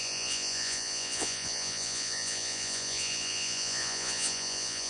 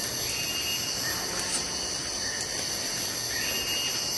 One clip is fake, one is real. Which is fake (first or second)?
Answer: first